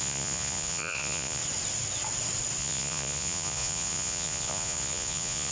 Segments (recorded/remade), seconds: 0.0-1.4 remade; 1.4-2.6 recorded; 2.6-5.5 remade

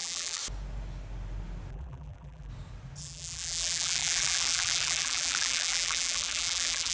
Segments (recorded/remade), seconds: 0.0-0.4 remade; 0.4-1.7 recorded; 1.7-2.5 remade; 2.5-3.0 recorded; 3.0-6.9 remade

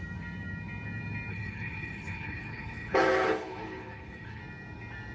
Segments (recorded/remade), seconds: 0.0-1.3 recorded; 1.3-4.4 remade; 4.4-5.1 recorded

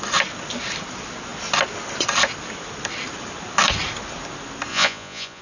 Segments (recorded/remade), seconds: 0.0-4.7 recorded; 4.7-5.4 remade